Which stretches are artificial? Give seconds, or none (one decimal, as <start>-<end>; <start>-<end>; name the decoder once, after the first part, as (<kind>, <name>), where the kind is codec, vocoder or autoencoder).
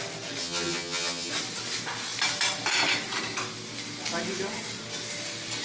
0.4-1.3 (vocoder, HiFi-GAN)